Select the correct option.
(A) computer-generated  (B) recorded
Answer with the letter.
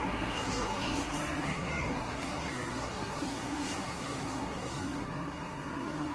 A